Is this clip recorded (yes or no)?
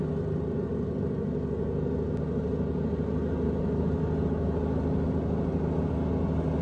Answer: yes